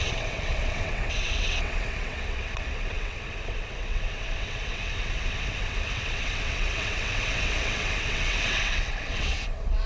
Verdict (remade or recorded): remade